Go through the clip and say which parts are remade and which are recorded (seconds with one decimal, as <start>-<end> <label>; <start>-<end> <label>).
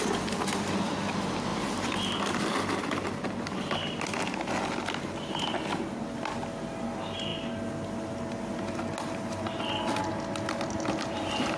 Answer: 0.0-11.6 recorded